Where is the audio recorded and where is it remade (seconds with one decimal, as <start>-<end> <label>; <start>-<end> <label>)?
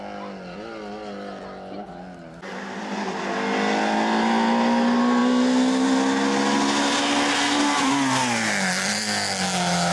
0.0-9.9 recorded